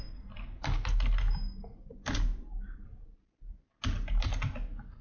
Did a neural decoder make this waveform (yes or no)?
no